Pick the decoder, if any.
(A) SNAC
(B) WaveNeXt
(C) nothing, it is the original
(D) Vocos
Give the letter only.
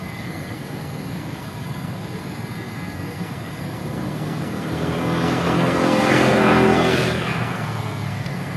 A